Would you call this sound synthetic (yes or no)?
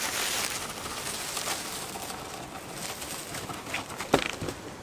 no